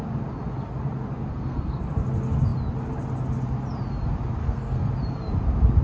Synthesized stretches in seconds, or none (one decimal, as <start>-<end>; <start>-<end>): 1.3-1.8; 4.4-4.9